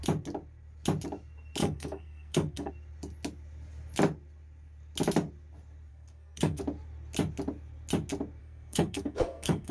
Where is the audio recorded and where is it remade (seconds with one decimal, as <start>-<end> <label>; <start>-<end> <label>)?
0.0-1.6 recorded; 1.6-2.7 remade; 2.7-5.9 recorded; 5.9-6.6 remade; 6.6-8.4 recorded; 8.4-9.7 remade